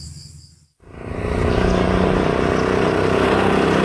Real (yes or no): yes